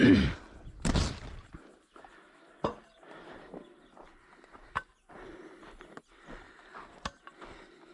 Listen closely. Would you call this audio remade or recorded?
recorded